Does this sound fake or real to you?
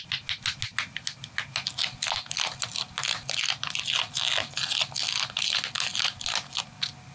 real